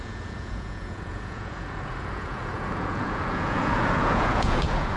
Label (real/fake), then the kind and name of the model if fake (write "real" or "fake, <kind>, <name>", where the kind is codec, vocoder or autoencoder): fake, vocoder, Vocos